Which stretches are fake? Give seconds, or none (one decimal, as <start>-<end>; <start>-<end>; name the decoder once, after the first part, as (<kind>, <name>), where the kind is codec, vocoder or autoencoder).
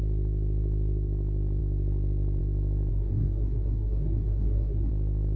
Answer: 2.9-4.9 (codec, SNAC)